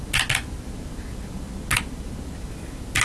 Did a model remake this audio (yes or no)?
no